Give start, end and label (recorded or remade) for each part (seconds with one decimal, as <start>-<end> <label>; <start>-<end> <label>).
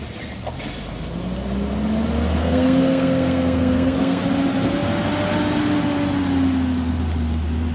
0.0-2.4 recorded; 2.4-4.2 remade; 4.2-7.7 recorded